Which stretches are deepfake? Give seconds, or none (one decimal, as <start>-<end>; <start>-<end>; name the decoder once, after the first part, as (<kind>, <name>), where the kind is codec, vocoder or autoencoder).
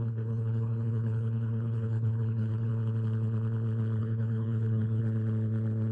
0.0-2.7 (codec, HILCodec); 4.0-5.0